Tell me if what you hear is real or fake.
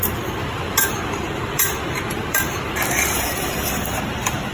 fake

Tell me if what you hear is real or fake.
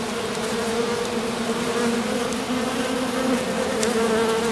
real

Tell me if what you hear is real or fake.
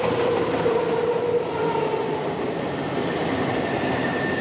fake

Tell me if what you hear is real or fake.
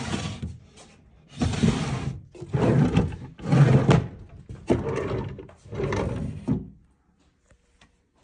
real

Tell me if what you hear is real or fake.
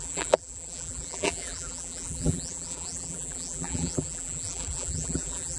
fake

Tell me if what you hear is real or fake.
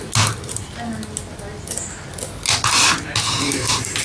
real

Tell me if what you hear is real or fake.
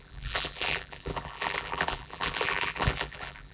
fake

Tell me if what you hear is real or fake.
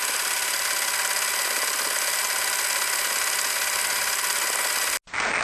real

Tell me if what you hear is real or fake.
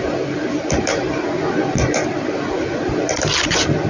real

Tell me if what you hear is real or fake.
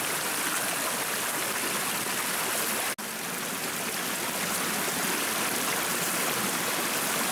real